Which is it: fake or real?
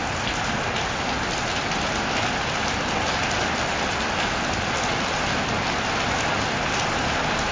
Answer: real